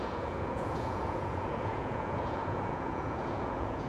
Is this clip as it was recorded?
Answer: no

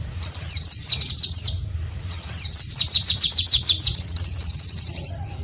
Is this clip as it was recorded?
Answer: no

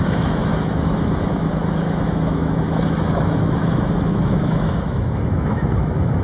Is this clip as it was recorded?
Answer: no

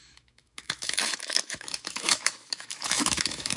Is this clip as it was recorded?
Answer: no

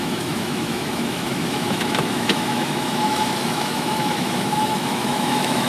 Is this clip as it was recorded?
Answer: no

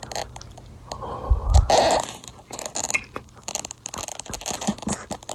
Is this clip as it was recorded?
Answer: yes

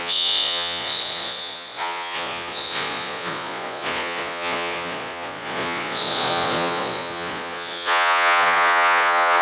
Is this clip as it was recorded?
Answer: no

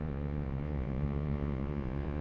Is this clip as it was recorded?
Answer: no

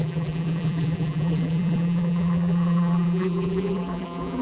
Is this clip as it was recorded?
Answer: no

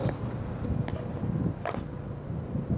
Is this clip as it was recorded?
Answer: yes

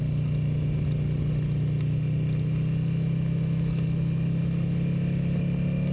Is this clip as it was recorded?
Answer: yes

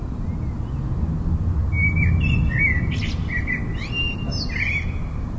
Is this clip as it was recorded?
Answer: yes